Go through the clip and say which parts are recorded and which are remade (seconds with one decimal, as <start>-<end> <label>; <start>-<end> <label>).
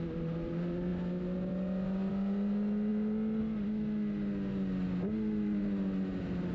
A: 0.0-6.5 recorded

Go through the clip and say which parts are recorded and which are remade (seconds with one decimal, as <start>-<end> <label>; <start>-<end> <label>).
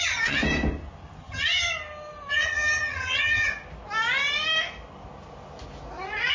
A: 0.0-0.4 remade; 0.4-1.2 recorded; 1.2-1.7 remade; 1.7-2.3 recorded; 2.3-3.5 remade; 3.5-6.3 recorded